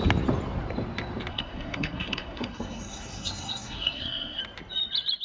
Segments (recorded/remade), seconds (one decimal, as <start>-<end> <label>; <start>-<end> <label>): 0.0-1.3 recorded; 1.3-4.4 remade; 4.4-5.2 recorded